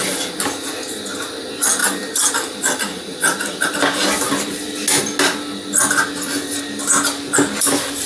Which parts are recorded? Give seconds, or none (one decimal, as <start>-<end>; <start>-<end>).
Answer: 0.0-8.1